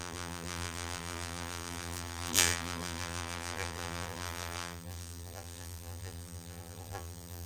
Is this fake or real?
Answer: fake